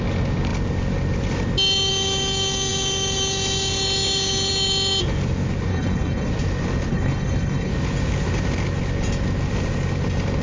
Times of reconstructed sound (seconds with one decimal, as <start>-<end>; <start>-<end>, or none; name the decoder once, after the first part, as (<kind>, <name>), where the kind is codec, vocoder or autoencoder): 5.7-6.3 (codec, HILCodec); 6.9-7.7

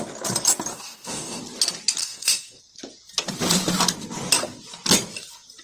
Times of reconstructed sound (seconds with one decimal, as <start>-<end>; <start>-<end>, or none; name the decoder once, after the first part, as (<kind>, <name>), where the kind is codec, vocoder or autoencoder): 0.7-1.4 (codec, DAC); 2.0-2.6

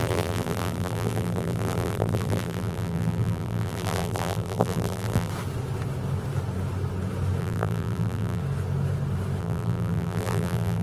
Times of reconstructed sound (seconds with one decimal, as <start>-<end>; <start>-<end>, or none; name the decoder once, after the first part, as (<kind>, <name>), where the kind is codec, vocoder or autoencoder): 0.0-5.3 (vocoder, BigVGAN v2); 7.4-8.4; 9.4-10.8

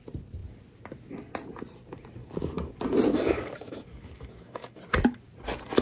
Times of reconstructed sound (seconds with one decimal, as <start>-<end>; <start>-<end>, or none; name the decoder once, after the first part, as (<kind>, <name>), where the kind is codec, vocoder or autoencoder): 2.2-2.7 (codec, DAC); 3.1-4.8

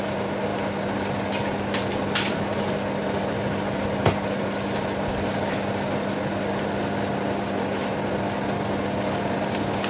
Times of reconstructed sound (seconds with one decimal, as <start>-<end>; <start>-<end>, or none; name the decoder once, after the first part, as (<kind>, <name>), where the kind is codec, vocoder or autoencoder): none